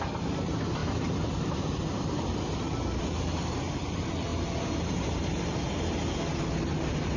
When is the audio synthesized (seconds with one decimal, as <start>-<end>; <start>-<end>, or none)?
4.3-5.7